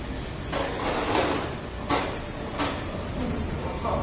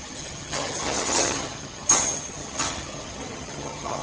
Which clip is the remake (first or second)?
second